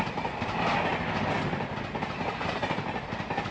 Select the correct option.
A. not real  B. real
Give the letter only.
B